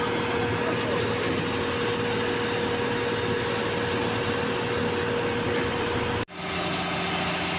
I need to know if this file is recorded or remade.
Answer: recorded